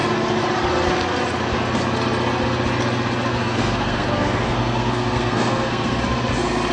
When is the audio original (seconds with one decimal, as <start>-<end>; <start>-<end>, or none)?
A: 0.0-3.3; 6.0-6.7